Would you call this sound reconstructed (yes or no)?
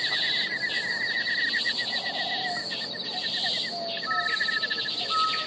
no